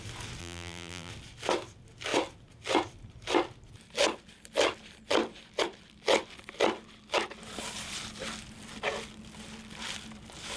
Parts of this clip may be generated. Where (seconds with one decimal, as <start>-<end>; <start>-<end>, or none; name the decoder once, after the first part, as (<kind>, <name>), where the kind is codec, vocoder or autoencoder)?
0.4-1.1 (vocoder, BigVGAN v2)